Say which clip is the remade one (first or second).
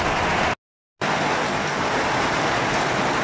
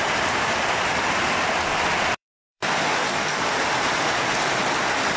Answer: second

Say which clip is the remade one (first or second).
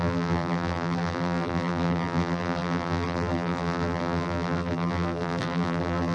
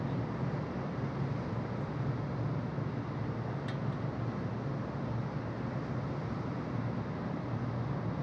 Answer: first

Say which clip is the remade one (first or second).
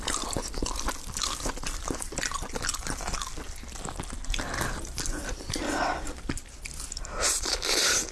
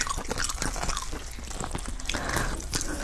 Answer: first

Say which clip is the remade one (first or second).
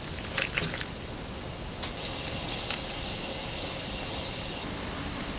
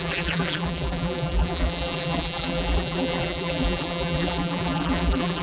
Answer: second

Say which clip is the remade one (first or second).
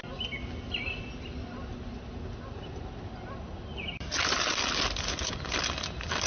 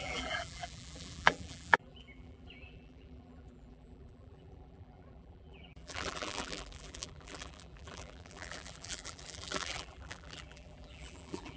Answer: second